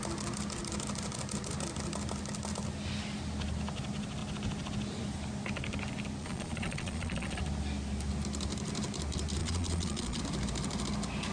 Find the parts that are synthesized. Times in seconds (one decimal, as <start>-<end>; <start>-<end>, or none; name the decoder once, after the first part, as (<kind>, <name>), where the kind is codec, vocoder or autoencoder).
6.2-7.4 (vocoder, Vocos); 9.4-10.2

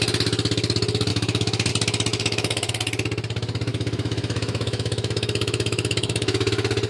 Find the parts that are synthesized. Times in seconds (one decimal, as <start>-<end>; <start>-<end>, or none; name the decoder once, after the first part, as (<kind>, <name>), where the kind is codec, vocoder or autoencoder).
1.1-1.7 (autoencoder, DAC-VAE); 2.1-2.7; 3.7-6.5